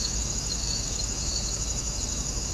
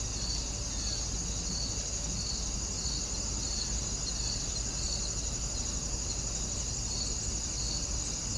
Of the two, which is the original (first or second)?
second